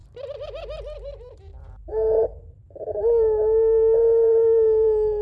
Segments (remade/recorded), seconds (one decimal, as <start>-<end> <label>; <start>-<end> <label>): 0.0-1.4 remade; 1.4-1.9 recorded; 1.9-5.2 remade

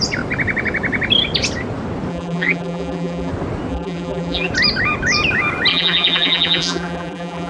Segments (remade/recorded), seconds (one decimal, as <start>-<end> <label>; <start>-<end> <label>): 0.0-2.1 recorded; 2.1-3.3 remade; 3.3-3.7 recorded; 3.7-4.5 remade; 4.5-5.7 recorded; 5.7-7.5 remade

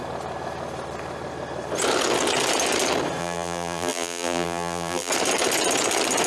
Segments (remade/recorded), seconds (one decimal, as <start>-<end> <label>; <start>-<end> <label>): 0.0-3.2 recorded; 3.2-5.1 remade; 5.1-6.3 recorded

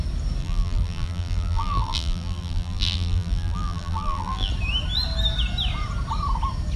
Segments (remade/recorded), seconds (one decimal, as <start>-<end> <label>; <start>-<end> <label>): 0.0-0.4 recorded; 0.4-4.5 remade; 4.5-6.8 recorded